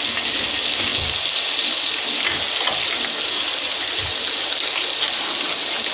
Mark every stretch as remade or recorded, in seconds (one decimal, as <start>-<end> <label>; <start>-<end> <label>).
0.0-5.9 recorded